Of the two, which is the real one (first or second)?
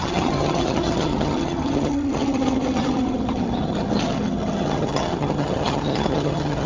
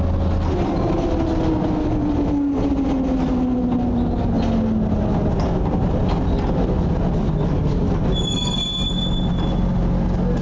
second